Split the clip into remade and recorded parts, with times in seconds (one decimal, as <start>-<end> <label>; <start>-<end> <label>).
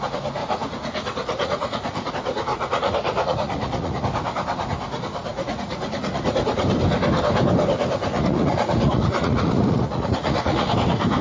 0.0-0.4 recorded; 0.4-2.1 remade; 2.1-2.5 recorded; 2.5-4.0 remade; 4.0-5.3 recorded; 5.3-6.2 remade; 6.2-8.1 recorded; 8.1-10.7 remade; 10.7-11.2 recorded